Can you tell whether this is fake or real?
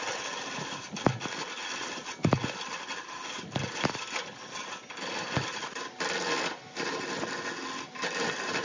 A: real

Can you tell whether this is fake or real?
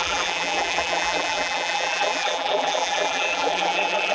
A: fake